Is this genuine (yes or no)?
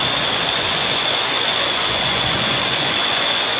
no